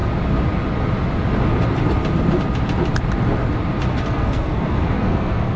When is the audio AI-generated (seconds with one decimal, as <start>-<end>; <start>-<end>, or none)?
3.9-5.6